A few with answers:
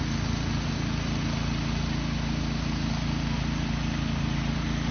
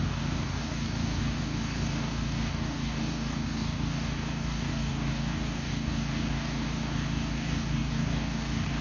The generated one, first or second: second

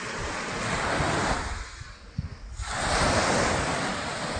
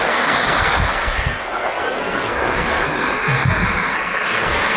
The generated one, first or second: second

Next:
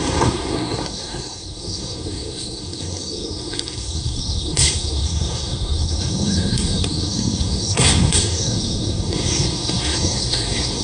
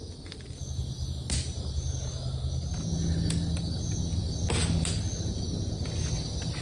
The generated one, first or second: first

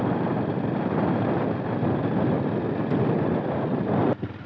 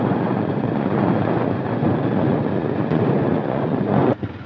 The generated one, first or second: second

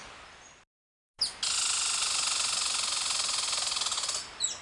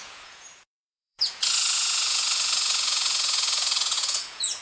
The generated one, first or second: second